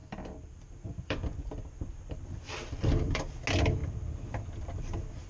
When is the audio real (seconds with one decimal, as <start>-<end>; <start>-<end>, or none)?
3.2-3.8; 4.6-5.3

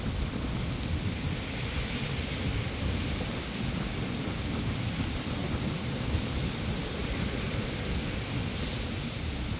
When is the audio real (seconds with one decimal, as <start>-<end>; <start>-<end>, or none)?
0.0-9.6